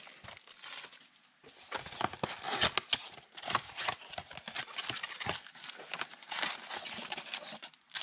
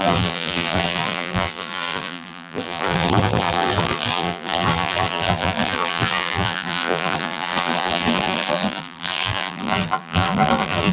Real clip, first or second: first